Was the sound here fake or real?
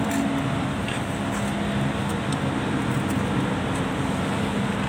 real